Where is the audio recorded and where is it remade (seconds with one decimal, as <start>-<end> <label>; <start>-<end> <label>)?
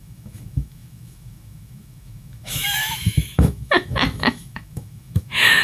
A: 0.0-5.6 remade